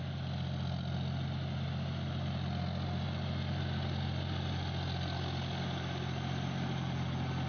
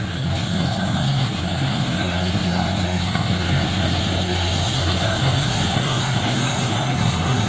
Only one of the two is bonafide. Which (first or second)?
first